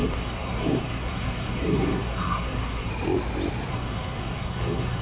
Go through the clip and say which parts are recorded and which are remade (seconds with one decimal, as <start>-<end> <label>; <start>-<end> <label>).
0.0-2.9 remade; 2.9-3.7 recorded; 3.7-5.0 remade